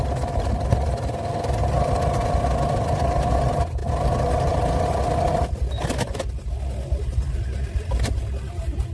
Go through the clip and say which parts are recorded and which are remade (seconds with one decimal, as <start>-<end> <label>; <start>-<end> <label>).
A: 0.0-8.9 recorded